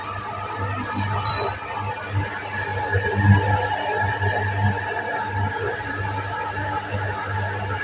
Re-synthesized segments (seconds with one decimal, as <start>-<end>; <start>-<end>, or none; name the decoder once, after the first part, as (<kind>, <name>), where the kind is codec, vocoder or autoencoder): none